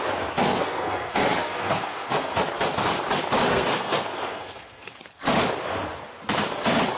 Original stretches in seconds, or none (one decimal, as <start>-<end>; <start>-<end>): 0.0-0.4; 2.4-3.5; 4.9-7.0